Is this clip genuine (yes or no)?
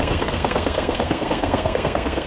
no